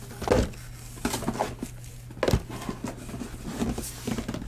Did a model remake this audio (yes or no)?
no